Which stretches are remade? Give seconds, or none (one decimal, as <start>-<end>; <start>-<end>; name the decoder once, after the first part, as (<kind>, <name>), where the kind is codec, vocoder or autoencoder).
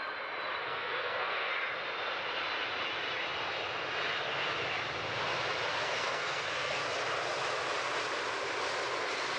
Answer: 0.6-1.5 (codec, SNAC); 5.7-6.8